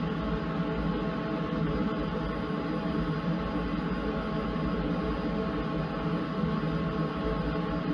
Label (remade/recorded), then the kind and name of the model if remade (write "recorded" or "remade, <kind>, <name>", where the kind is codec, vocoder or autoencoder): recorded